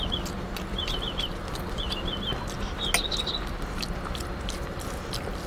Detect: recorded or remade recorded